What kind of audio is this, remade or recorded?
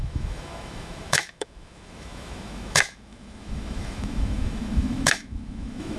remade